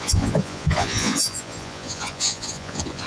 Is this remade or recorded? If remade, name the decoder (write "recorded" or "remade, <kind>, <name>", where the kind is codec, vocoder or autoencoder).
remade, vocoder, Vocos